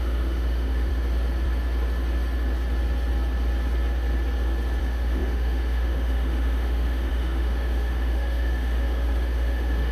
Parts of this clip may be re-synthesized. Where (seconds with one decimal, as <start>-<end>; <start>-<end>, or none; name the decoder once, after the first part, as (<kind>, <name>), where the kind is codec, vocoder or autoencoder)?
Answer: 0.0-0.9 (autoencoder, DAC-VAE); 4.8-9.9